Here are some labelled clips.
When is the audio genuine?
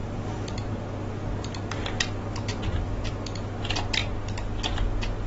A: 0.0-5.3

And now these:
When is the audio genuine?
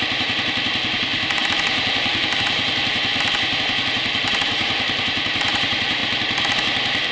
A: 3.1-3.6; 6.0-7.1